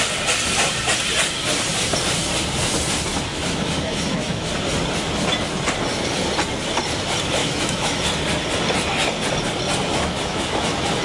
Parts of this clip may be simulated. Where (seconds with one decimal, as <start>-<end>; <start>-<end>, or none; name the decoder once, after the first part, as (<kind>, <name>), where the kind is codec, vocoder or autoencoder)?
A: 3.3-4.5 (autoencoder, DAC-VAE); 7.4-8.0; 9.9-11.0